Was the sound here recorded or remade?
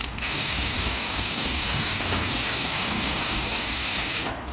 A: remade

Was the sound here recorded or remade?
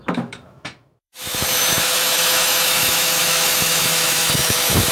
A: remade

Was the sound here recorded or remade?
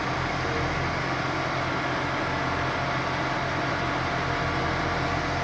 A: recorded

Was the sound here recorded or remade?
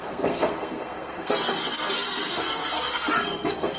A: remade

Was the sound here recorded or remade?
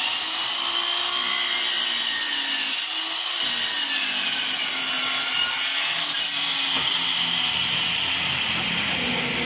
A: recorded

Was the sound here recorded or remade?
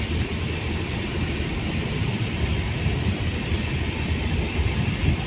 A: remade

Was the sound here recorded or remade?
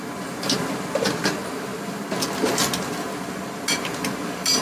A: recorded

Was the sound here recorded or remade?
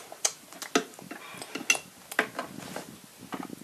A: recorded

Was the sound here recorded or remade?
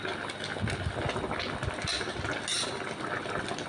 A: recorded